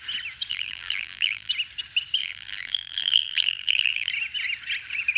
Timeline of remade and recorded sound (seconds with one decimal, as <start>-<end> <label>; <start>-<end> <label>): 0.0-0.5 recorded; 0.5-1.5 remade; 1.5-2.2 recorded; 2.2-4.1 remade; 4.1-5.2 recorded